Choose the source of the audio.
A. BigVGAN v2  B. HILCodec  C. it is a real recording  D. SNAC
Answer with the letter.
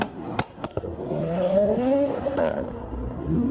D